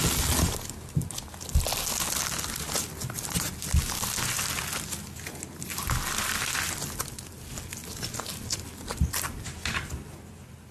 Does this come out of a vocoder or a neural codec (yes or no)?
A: no